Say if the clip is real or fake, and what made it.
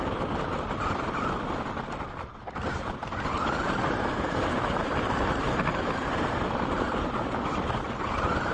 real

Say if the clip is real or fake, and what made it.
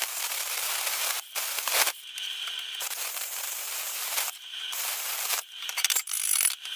fake, vocoder, BigVGAN v2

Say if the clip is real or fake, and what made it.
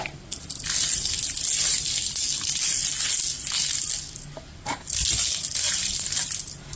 real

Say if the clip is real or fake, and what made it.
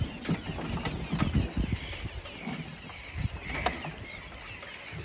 real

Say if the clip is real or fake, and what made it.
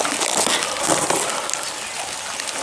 real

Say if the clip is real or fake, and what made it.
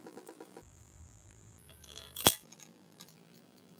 fake, vocoder, BigVGAN v2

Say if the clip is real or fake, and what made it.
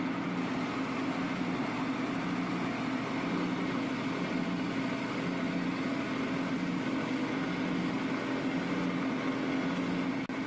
real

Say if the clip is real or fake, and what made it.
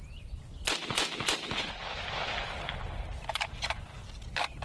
real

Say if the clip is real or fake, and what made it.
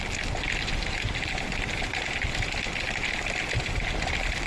real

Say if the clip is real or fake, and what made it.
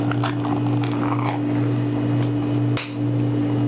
real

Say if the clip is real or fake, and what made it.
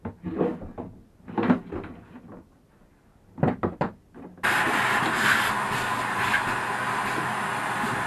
real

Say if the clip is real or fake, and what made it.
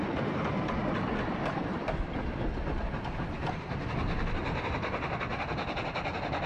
real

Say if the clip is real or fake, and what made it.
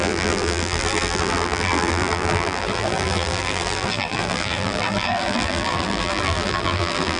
fake, vocoder, BigVGAN v2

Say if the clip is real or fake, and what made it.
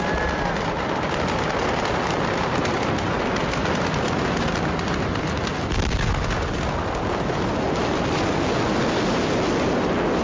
real